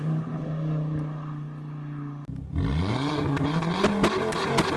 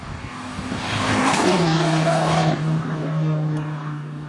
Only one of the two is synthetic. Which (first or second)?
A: second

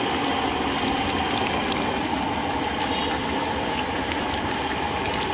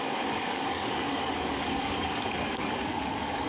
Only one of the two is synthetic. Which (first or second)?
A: second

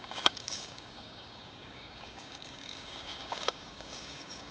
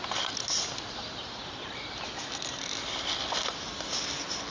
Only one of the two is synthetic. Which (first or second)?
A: first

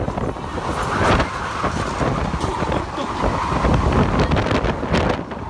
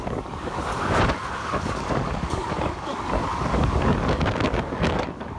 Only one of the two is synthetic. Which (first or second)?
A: second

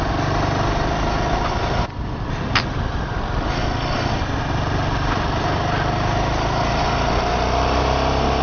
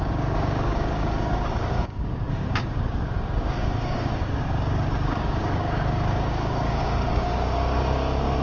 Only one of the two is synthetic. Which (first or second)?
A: second